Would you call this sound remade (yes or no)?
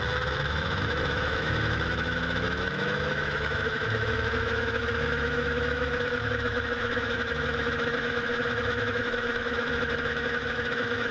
yes